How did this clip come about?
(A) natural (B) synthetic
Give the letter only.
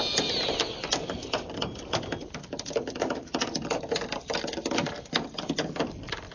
A